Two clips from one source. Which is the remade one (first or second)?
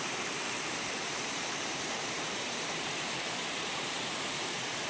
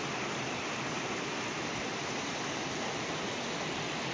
first